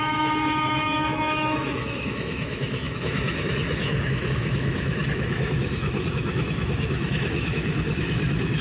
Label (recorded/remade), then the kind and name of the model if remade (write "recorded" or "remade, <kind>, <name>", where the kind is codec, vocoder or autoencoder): remade, autoencoder, DAC-VAE